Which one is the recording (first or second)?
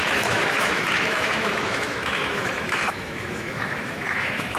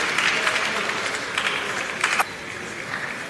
second